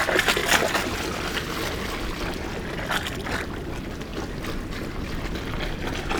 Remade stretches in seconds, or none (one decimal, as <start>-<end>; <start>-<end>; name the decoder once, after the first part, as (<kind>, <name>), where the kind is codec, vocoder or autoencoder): none